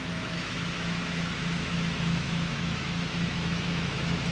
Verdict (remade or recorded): remade